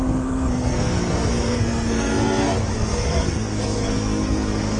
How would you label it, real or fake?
fake